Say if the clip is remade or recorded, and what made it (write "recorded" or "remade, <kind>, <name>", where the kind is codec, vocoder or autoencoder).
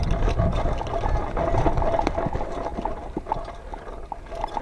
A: recorded